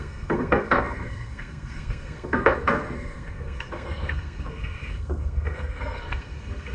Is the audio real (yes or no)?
no